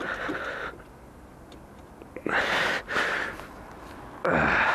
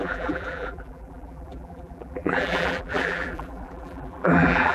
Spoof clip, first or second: second